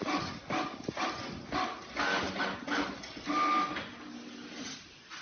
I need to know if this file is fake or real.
real